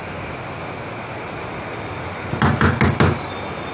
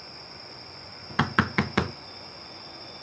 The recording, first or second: first